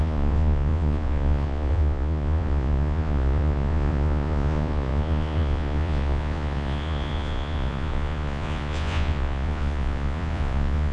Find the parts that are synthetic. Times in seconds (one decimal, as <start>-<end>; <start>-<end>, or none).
0.0-10.9